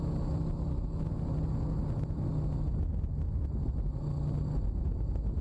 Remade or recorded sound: recorded